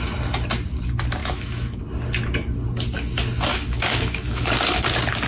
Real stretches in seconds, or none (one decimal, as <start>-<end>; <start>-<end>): 0.0-1.2; 1.8-3.5; 4.5-5.3